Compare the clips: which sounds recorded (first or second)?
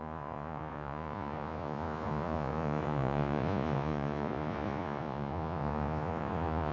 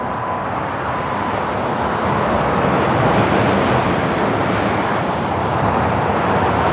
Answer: second